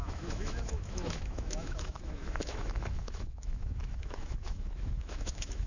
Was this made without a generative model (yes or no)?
no